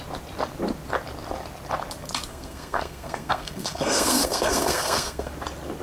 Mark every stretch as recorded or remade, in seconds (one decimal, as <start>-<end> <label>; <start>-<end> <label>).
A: 0.0-2.3 recorded; 2.3-5.3 remade; 5.3-5.8 recorded